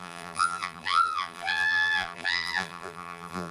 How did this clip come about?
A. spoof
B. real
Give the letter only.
A